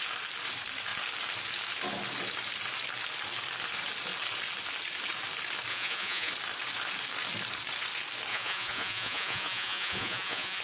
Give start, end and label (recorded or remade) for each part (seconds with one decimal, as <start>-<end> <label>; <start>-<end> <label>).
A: 0.0-5.7 recorded; 5.7-6.3 remade; 6.3-8.3 recorded; 8.3-10.6 remade